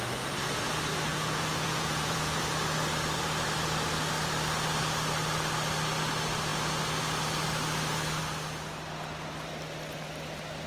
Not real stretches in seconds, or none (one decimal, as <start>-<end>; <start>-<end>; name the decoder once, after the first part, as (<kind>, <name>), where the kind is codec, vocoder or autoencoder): 1.1-2.4 (vocoder, Vocos)